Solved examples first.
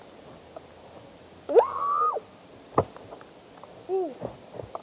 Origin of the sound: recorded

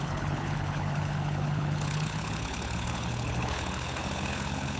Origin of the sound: remade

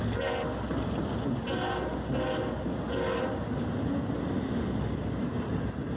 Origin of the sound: recorded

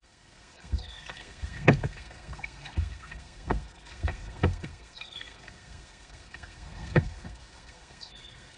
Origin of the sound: remade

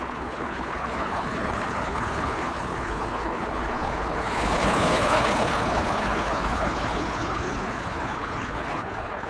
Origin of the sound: remade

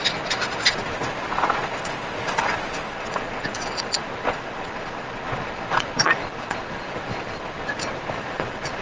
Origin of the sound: remade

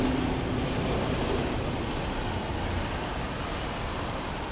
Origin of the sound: recorded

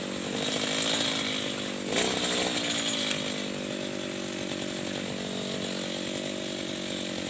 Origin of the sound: recorded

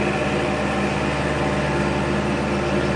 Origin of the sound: recorded